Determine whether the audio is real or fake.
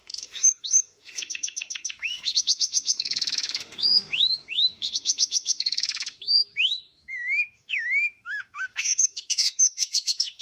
fake